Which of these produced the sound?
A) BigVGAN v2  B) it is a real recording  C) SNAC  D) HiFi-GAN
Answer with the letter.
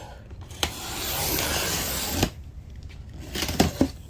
B